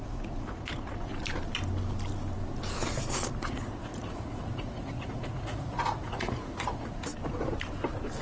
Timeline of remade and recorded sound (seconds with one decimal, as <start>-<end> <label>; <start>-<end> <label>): 0.0-1.1 remade; 1.1-3.4 recorded; 3.4-7.1 remade; 7.1-8.2 recorded

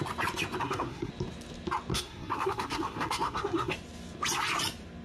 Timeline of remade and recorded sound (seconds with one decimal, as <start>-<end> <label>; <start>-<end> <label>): 0.0-0.6 recorded; 0.6-1.1 remade; 1.1-1.9 recorded; 1.9-3.7 remade; 3.7-5.0 recorded